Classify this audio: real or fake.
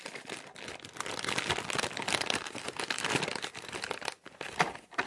real